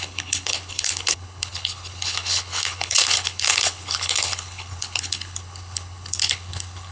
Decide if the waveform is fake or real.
fake